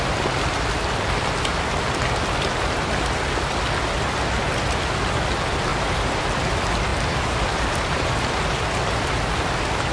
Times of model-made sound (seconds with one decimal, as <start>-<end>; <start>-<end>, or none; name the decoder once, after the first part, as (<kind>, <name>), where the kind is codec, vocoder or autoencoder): 5.7-6.3 (vocoder, BigVGAN v2); 6.9-8.3